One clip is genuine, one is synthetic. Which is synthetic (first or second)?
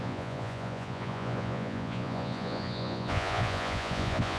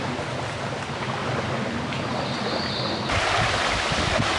first